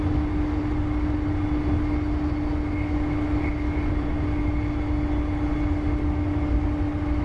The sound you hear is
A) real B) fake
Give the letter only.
A